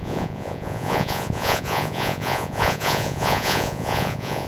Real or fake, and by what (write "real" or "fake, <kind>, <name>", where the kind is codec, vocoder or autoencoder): fake, vocoder, Vocos